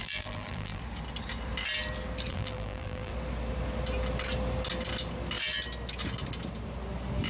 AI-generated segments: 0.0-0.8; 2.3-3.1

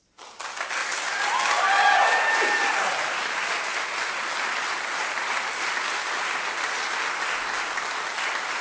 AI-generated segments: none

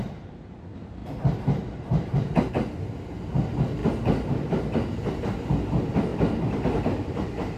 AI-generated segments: 1.0-2.5; 6.1-6.8